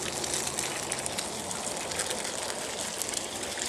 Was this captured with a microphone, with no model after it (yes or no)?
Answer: yes